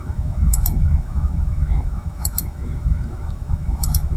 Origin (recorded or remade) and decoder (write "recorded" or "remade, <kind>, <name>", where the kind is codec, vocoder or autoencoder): remade, autoencoder, DAC-VAE